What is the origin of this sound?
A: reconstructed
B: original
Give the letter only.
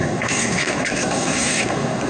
A